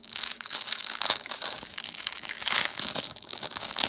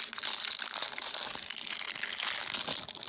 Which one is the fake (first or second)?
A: first